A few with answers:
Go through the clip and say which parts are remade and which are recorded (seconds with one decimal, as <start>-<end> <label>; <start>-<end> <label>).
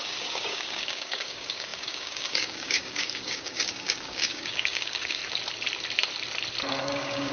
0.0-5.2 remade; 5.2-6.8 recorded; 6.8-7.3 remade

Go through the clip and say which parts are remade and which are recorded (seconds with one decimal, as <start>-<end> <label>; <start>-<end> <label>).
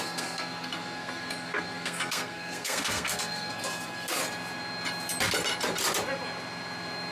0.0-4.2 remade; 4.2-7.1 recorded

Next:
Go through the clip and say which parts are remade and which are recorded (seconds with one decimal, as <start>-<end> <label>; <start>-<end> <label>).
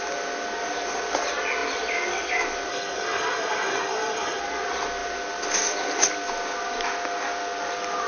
0.0-2.7 recorded; 2.7-4.4 remade; 4.4-8.1 recorded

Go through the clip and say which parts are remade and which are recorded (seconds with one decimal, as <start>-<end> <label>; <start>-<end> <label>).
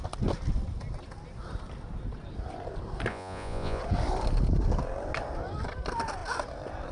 0.0-3.1 recorded; 3.1-3.8 remade; 3.8-6.9 recorded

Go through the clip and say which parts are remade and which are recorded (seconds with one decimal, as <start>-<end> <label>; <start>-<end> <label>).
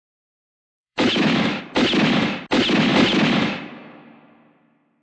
0.0-1.6 remade; 1.6-5.0 recorded